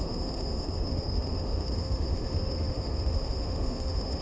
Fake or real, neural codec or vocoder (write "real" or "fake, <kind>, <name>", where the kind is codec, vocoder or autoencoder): fake, autoencoder, DAC-VAE